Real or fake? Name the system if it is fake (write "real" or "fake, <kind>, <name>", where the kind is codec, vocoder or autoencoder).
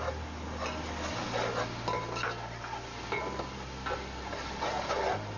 real